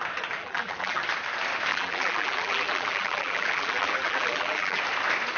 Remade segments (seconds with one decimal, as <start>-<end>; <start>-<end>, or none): 0.4-1.0; 1.7-4.8